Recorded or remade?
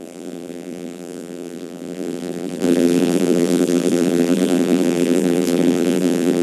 remade